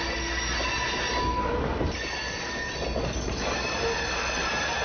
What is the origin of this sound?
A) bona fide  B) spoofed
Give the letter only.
A